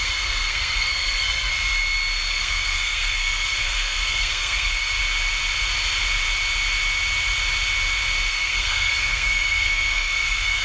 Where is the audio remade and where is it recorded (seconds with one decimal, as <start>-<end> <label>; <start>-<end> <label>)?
0.0-1.5 remade; 1.5-2.3 recorded; 2.3-5.0 remade; 5.0-8.3 recorded; 8.3-10.6 remade